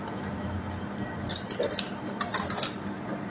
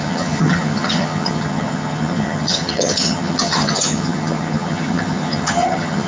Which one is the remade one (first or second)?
second